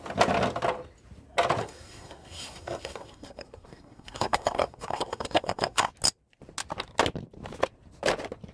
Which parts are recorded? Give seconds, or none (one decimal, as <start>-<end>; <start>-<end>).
0.0-1.6; 5.9-8.5